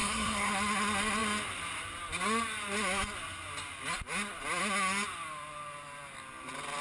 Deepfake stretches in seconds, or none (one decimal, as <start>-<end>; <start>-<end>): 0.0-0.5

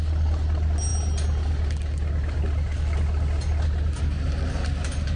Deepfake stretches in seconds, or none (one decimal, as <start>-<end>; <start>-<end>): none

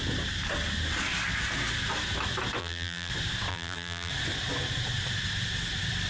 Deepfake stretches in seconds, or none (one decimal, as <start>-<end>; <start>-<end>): 2.6-3.1; 3.5-4.1

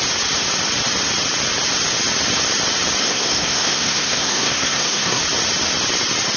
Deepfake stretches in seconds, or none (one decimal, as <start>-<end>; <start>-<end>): 3.0-5.2

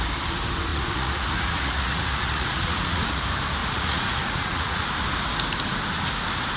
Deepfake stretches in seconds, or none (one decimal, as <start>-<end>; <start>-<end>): 0.7-3.2; 3.6-4.9

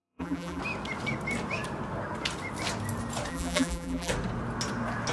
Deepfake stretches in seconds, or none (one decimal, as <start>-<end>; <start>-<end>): 0.0-0.6; 3.3-4.1

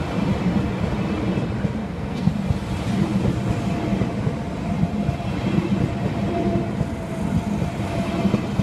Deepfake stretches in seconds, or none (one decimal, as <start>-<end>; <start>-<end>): 1.8-2.3

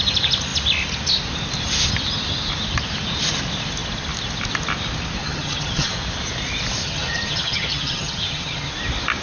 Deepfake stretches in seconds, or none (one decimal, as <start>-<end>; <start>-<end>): 5.2-5.9; 6.8-8.7